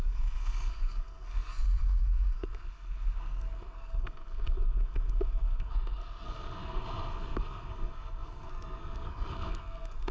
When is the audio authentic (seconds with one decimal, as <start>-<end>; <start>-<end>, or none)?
none